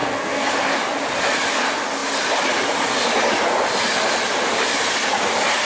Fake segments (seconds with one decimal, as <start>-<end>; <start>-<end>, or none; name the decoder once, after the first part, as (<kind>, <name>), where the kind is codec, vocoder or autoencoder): 0.0-0.5 (codec, SNAC)